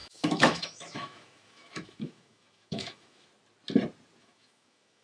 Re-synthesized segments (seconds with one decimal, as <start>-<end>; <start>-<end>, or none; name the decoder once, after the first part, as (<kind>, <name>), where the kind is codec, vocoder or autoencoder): 0.0-3.3 (autoencoder, DAC-VAE); 4.2-5.0